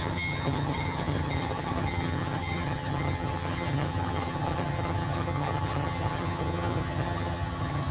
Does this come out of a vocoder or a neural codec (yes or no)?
yes